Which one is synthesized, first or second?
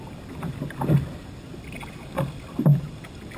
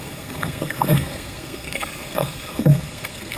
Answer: second